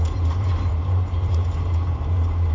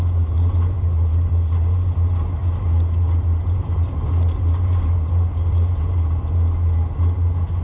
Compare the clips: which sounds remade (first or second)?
first